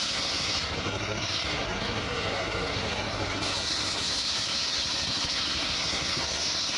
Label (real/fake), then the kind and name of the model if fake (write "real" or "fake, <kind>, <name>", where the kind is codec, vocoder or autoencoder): fake, codec, SNAC